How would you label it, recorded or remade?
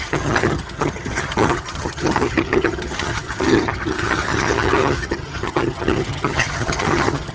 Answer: remade